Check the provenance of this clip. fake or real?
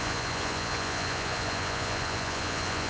fake